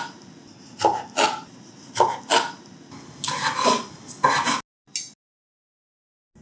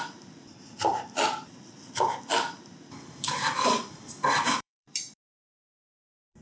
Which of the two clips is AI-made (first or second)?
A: second